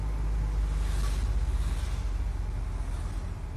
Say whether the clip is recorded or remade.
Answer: recorded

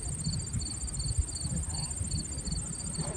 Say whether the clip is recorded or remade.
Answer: recorded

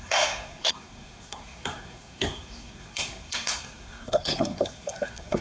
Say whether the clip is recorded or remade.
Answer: remade